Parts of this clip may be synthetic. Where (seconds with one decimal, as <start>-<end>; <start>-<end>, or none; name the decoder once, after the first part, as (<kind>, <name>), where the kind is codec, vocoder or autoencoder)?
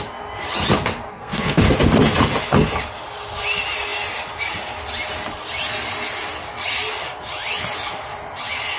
1.1-1.6 (codec, SNAC)